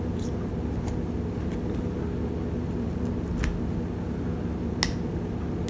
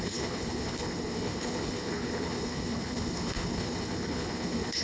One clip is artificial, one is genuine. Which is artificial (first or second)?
second